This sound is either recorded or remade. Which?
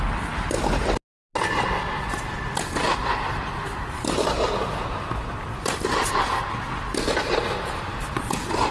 recorded